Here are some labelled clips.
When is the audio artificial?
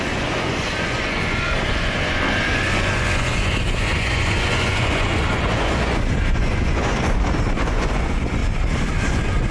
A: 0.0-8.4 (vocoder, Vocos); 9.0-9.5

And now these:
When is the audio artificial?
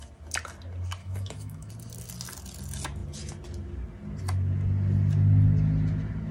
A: 1.0-1.7 (autoencoder, DAC-VAE)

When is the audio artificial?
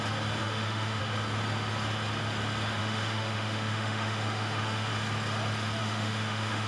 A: 0.4-1.0 (autoencoder, DAC-VAE); 2.8-4.9; 5.8-6.7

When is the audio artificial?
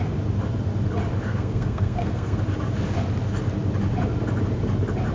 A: 1.3-2.4 (codec, SNAC)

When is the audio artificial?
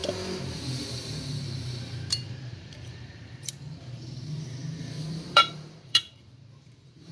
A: 0.0-7.1 (vocoder, BigVGAN v2)